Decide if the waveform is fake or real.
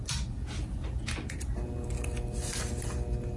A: real